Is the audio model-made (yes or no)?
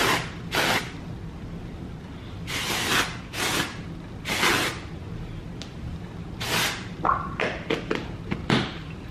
no